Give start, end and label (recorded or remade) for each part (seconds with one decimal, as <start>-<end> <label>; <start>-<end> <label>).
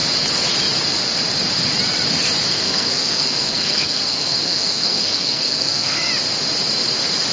0.0-2.5 recorded; 2.5-6.1 remade; 6.1-7.3 recorded